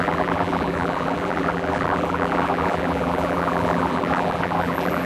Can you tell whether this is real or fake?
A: fake